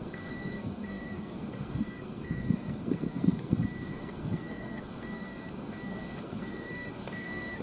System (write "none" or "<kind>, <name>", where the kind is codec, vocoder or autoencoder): codec, SNAC